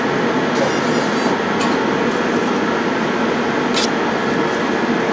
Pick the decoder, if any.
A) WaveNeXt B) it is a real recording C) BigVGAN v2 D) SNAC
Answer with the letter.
B